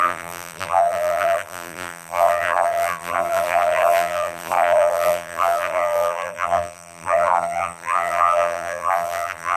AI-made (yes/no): yes